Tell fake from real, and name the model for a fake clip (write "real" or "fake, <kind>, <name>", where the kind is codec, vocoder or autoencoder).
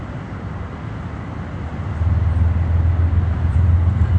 real